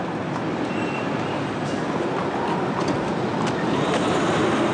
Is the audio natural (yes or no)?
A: yes